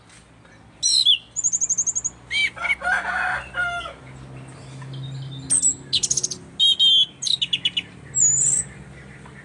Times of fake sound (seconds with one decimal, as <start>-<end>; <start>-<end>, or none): none